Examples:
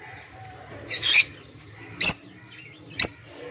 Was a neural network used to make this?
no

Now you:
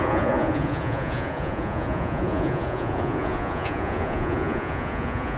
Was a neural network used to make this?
yes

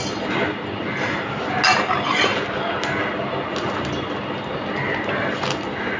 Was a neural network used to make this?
no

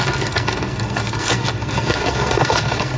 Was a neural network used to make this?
yes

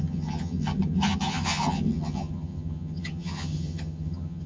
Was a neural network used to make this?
yes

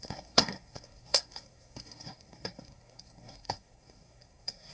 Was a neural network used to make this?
yes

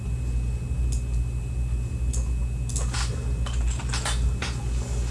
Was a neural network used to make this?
no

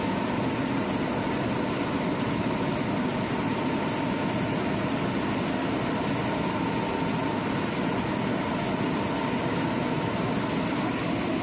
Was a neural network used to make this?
no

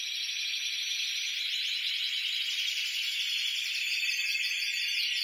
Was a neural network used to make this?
no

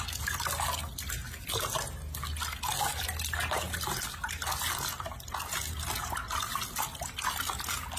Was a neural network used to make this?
no